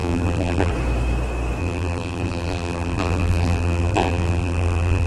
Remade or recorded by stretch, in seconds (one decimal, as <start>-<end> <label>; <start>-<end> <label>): 0.0-0.7 remade; 0.7-1.6 recorded; 1.6-5.1 remade